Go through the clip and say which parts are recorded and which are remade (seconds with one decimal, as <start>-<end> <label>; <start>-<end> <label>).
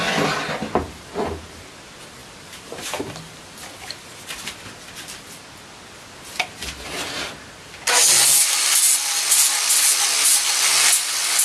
0.0-2.2 recorded; 2.2-3.7 remade; 3.7-11.4 recorded